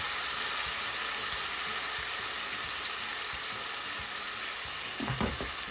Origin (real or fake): real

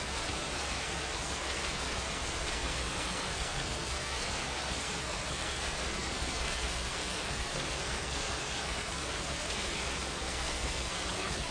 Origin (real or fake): fake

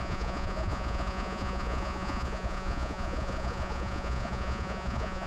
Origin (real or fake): fake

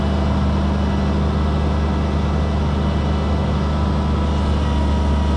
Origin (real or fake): real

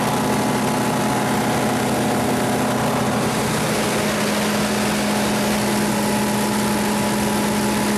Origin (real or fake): real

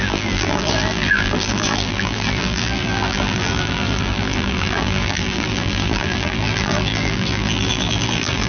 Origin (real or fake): fake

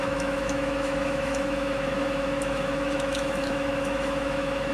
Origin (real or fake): fake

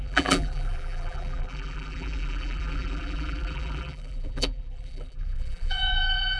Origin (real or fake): fake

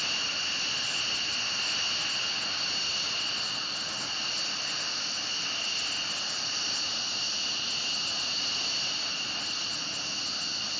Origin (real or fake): real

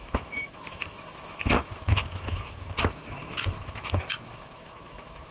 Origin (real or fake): fake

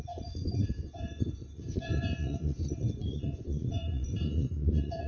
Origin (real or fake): fake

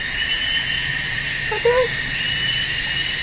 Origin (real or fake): real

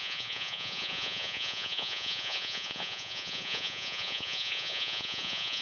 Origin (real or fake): fake